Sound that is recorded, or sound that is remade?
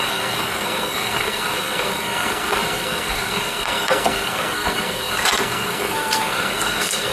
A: remade